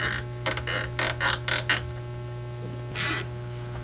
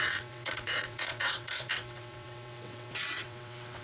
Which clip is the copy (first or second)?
second